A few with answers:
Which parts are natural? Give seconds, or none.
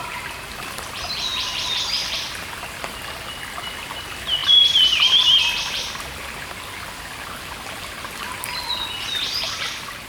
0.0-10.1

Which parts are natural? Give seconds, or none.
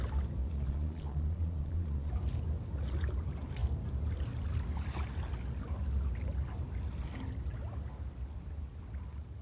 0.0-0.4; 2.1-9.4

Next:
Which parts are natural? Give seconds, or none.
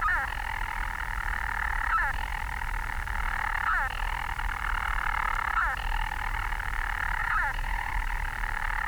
0.0-7.2; 7.9-8.9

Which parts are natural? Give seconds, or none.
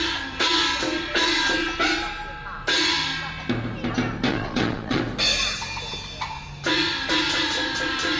0.0-4.3; 5.0-8.2